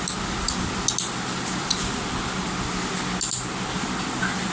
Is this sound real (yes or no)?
yes